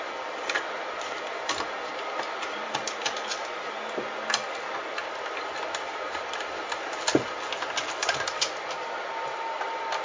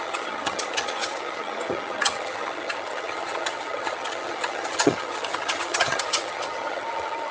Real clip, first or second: first